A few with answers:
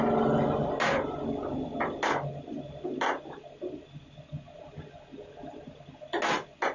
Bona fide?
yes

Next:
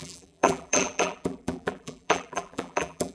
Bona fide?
no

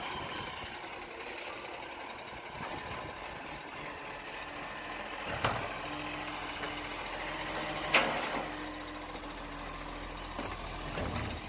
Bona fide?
yes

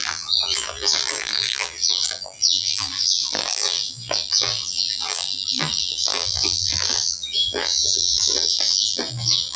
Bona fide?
no